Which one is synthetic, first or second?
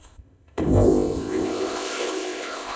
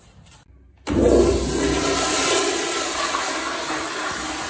first